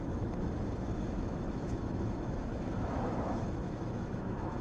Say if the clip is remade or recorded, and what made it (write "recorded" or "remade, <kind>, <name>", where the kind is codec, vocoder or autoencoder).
remade, autoencoder, DAC-VAE